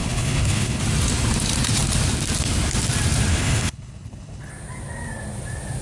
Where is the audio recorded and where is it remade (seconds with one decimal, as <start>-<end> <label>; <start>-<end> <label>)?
0.0-0.8 remade; 0.8-3.3 recorded; 3.3-4.5 remade; 4.5-5.8 recorded